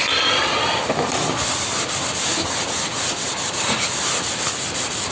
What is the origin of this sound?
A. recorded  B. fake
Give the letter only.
A